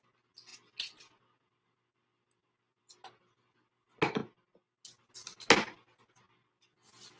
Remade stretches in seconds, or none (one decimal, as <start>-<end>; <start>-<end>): none